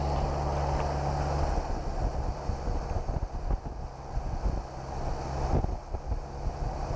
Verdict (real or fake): real